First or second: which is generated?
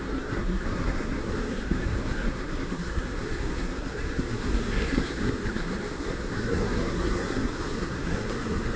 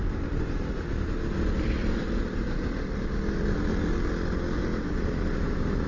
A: first